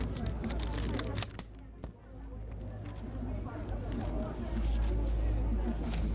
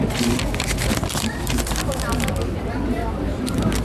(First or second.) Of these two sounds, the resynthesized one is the second